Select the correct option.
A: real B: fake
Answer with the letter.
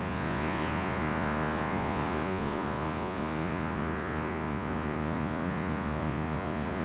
B